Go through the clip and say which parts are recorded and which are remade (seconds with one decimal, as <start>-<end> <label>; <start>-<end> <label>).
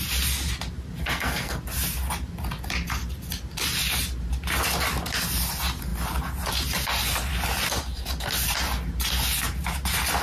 0.0-1.0 recorded; 1.0-1.6 remade; 1.6-10.2 recorded